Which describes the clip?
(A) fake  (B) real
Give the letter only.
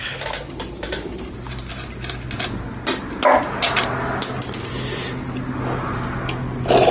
B